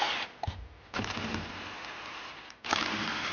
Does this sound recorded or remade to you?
recorded